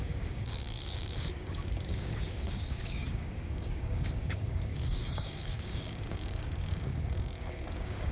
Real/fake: fake